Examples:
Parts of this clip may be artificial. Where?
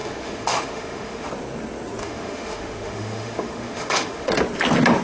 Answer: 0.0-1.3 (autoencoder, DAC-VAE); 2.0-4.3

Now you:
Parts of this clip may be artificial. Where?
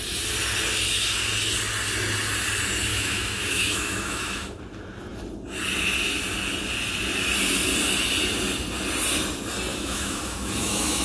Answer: 2.9-4.6 (autoencoder, DAC-VAE); 9.7-11.0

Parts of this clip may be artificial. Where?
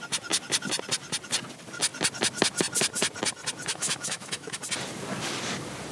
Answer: 3.7-4.6 (autoencoder, DAC-VAE)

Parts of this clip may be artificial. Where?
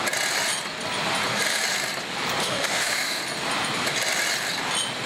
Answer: 2.4-3.2 (autoencoder, DAC-VAE)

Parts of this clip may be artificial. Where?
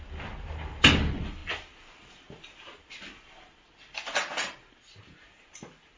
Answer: none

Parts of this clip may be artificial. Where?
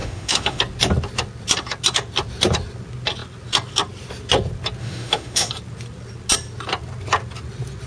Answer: 0.0-0.6 (autoencoder, DAC-VAE); 4.8-5.5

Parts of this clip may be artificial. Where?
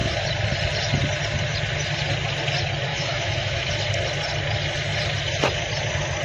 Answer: 2.9-3.7 (autoencoder, DAC-VAE)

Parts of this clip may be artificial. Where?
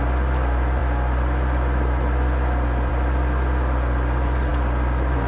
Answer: none